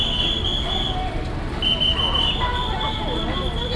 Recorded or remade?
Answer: recorded